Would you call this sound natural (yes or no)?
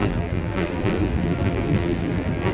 no